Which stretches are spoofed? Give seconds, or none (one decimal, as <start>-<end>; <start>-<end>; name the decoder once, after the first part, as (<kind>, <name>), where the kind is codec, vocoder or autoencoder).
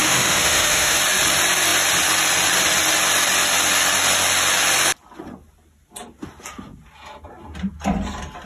0.0-1.0 (autoencoder, DAC-VAE)